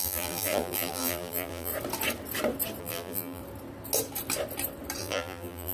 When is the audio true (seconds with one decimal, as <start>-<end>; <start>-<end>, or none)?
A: 1.7-2.8; 3.4-5.0